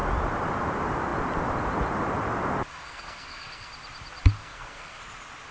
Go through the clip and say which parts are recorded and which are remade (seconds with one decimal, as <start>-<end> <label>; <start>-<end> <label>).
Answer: 0.0-2.7 recorded; 2.7-3.7 remade; 3.7-4.4 recorded; 4.4-5.0 remade; 5.0-5.5 recorded